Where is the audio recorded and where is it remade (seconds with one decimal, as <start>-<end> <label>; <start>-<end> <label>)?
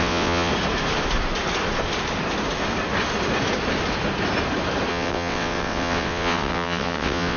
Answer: 0.0-0.5 remade; 0.5-4.9 recorded; 4.9-7.4 remade